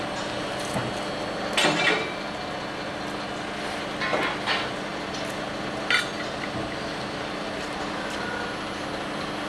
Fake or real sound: real